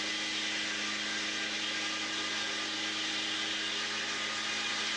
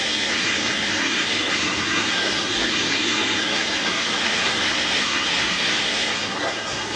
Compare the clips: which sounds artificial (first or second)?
second